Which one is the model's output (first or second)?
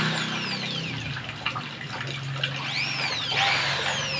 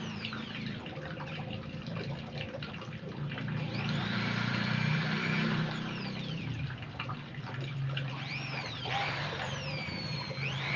second